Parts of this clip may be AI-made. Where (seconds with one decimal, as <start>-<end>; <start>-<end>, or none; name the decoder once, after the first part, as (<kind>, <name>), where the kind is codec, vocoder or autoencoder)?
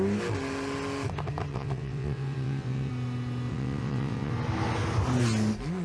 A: 1.5-2.9 (vocoder, WaveNeXt); 3.5-4.3